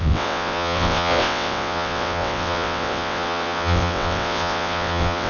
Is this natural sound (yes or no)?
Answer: no